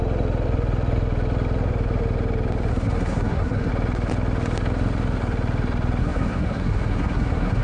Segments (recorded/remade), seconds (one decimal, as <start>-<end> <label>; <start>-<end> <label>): 0.0-2.7 recorded; 2.7-3.7 remade; 3.7-6.0 recorded; 6.0-7.6 remade